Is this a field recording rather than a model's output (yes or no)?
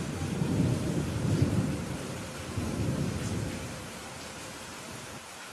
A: no